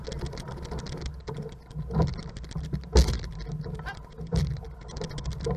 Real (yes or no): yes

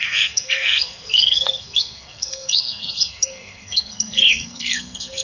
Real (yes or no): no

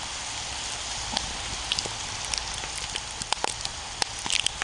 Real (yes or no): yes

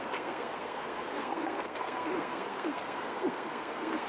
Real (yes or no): no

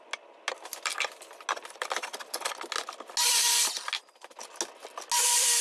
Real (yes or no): yes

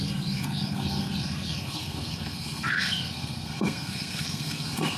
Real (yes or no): no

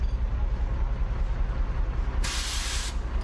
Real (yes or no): yes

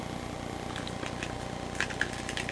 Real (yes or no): yes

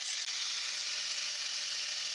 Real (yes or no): yes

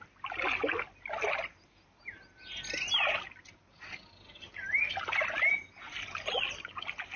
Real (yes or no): yes